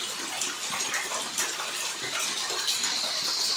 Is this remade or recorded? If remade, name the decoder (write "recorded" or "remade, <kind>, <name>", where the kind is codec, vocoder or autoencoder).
recorded